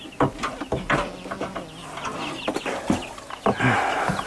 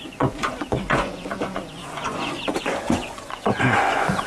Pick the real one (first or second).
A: first